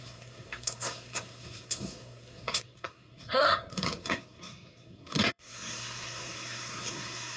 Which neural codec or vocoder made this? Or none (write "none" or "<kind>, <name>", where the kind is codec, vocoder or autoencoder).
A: codec, SNAC